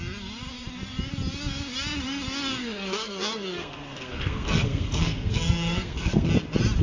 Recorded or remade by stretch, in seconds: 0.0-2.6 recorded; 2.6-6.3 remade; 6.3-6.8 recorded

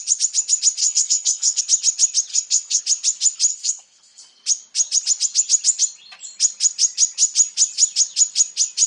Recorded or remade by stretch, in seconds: 0.0-0.8 recorded; 0.8-1.6 remade; 1.6-2.3 recorded; 2.3-2.8 remade; 2.8-3.5 recorded; 3.5-4.2 remade; 4.2-8.9 recorded

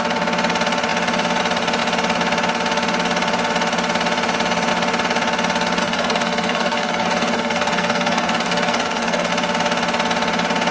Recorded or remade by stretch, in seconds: 0.0-5.8 recorded; 5.8-9.3 remade; 9.3-10.7 recorded

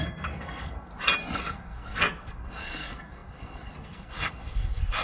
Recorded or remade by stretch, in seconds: 0.0-0.9 remade; 0.9-1.4 recorded; 1.4-5.0 remade